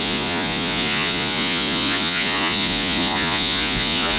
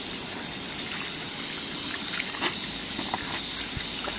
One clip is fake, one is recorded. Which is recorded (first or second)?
second